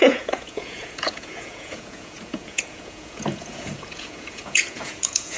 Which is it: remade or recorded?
remade